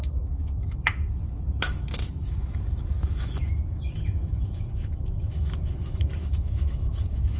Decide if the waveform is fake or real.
fake